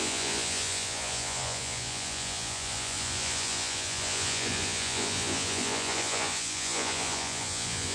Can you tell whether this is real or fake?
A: fake